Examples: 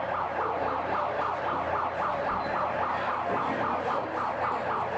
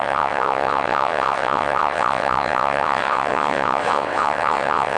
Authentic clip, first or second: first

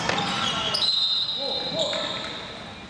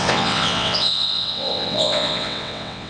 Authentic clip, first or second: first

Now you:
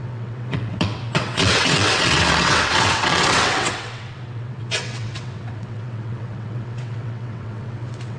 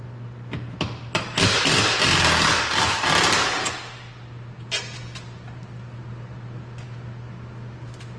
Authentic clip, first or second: second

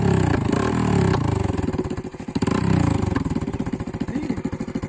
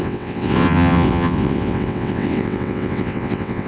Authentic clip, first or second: first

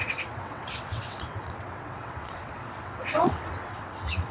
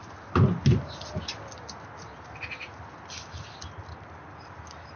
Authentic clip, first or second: second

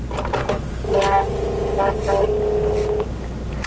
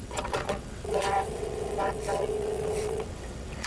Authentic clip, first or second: first